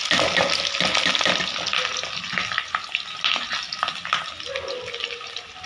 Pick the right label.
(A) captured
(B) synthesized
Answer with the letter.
A